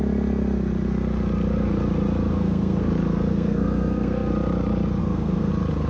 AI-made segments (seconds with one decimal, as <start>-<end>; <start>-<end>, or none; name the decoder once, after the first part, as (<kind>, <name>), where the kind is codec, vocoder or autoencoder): 2.3-2.9 (codec, SNAC); 3.3-4.3; 5.0-5.5

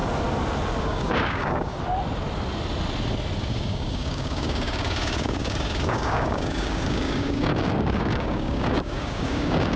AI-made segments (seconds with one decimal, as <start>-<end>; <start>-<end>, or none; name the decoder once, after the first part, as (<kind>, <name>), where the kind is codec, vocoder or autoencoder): 0.8-1.7 (codec, DAC); 3.4-9.8

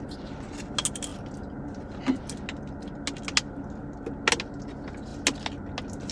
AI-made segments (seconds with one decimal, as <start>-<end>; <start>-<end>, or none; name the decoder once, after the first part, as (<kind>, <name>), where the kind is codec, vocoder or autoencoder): none